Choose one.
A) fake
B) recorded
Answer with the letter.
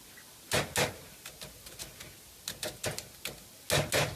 B